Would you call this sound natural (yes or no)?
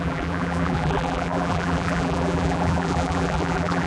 no